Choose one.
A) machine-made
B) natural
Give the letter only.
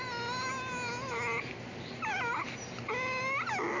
B